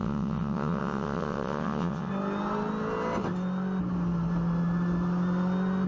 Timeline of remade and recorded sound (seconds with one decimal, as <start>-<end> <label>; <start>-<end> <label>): 0.0-2.1 remade; 2.1-5.9 recorded